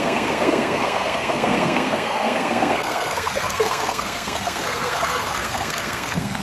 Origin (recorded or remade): remade